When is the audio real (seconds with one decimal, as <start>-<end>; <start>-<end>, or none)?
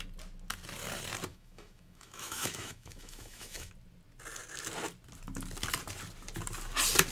0.0-1.3; 3.7-7.1